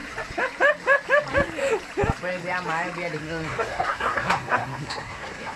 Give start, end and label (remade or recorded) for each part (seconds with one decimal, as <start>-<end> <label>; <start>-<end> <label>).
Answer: 0.0-3.2 recorded; 3.2-5.6 remade